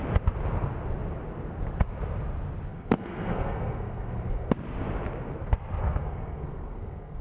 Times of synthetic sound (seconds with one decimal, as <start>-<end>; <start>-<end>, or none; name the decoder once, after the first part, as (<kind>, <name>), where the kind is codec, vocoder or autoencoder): 2.7-4.5 (codec, SNAC); 5.8-7.2